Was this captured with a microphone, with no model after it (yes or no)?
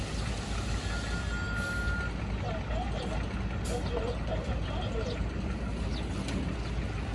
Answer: yes